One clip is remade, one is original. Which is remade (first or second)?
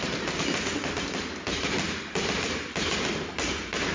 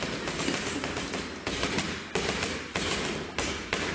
first